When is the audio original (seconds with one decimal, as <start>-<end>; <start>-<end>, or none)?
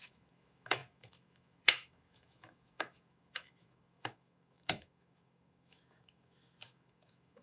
none